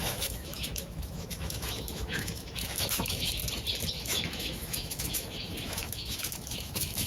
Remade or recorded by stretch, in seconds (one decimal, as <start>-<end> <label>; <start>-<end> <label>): 0.0-3.4 remade; 3.4-4.0 recorded; 4.0-7.1 remade